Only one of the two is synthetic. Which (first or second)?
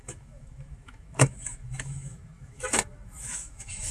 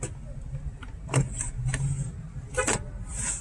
first